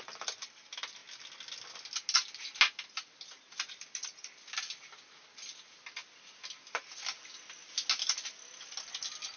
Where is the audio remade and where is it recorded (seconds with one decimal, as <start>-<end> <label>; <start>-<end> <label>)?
0.0-9.4 recorded